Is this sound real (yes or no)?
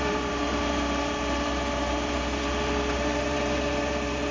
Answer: no